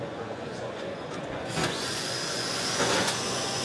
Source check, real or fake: fake